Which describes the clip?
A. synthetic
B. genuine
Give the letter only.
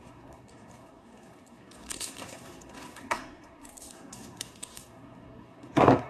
A